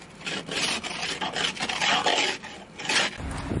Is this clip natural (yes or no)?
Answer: yes